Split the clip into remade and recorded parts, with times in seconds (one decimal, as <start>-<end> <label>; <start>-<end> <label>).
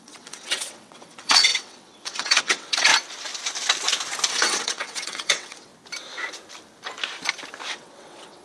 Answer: 0.0-2.9 remade; 2.9-4.3 recorded; 4.3-5.7 remade; 5.7-7.7 recorded; 7.7-8.4 remade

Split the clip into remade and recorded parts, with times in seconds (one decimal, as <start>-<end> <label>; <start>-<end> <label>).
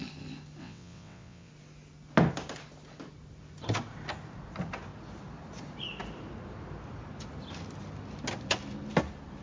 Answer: 0.0-0.6 recorded; 0.6-1.5 remade; 1.5-9.4 recorded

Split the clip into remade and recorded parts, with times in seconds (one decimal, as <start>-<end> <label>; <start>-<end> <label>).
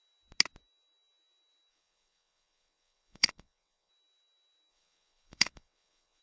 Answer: 0.0-1.7 recorded; 1.7-3.9 remade; 3.9-4.7 recorded; 4.7-6.2 remade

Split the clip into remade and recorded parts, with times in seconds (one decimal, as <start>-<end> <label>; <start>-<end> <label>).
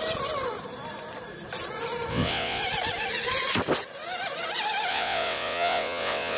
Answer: 0.0-2.1 recorded; 2.1-2.6 remade; 2.6-4.9 recorded; 4.9-6.4 remade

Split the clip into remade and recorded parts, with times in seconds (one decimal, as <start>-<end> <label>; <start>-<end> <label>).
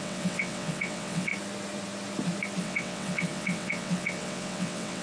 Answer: 0.0-1.3 remade; 1.3-2.6 recorded; 2.6-5.0 remade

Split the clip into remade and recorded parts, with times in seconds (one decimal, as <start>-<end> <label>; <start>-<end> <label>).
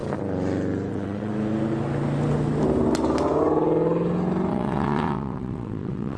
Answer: 0.0-0.9 recorded; 0.9-1.3 remade; 1.3-4.5 recorded; 4.5-6.2 remade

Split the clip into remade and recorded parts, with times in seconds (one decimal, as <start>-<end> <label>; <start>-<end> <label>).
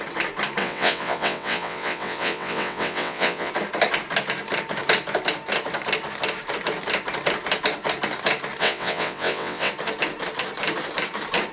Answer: 0.0-0.6 recorded; 0.6-3.5 remade; 3.5-8.6 recorded; 8.6-9.7 remade; 9.7-11.5 recorded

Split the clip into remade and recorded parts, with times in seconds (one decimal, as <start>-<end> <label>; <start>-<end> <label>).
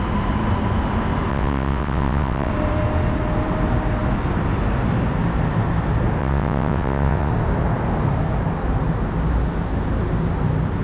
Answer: 0.0-1.3 recorded; 1.3-2.5 remade; 2.5-6.2 recorded; 6.2-7.3 remade; 7.3-10.8 recorded